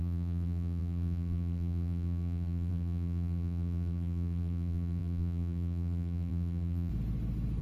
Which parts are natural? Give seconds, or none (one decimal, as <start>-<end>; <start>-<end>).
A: 6.9-7.6